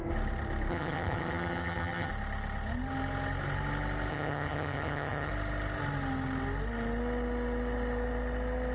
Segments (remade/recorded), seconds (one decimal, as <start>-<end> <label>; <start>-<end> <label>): 0.0-0.7 recorded; 0.7-2.1 remade; 2.1-4.1 recorded; 4.1-5.3 remade; 5.3-8.7 recorded